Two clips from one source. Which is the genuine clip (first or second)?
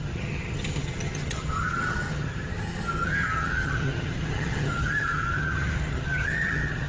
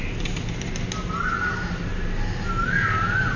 second